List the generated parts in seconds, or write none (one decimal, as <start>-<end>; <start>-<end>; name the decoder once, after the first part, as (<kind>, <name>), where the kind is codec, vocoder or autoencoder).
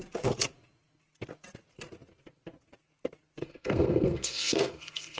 3.4-5.2 (codec, SNAC)